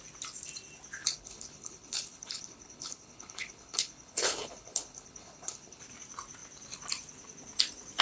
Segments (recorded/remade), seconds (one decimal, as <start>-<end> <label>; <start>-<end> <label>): 0.0-1.0 recorded; 1.0-5.8 remade; 5.8-8.0 recorded